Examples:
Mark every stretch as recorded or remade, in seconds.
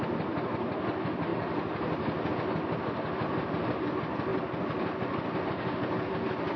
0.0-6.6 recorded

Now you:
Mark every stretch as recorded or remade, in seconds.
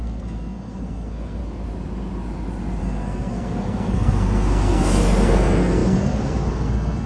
0.0-1.4 remade; 1.4-2.8 recorded; 2.8-7.1 remade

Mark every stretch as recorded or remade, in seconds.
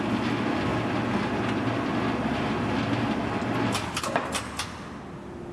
0.0-5.5 recorded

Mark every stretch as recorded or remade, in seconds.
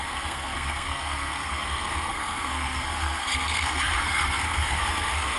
0.0-5.4 remade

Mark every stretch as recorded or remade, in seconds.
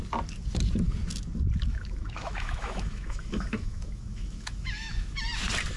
0.0-1.7 recorded; 1.7-5.2 remade; 5.2-5.8 recorded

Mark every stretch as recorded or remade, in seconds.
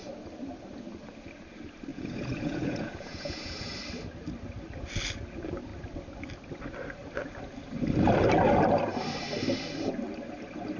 0.0-1.9 recorded; 1.9-3.7 remade; 3.7-10.8 recorded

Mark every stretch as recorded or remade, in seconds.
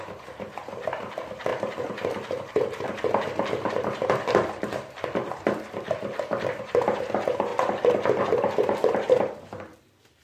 0.0-10.2 remade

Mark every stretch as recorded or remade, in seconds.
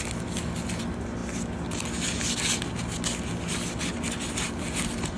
0.0-5.2 recorded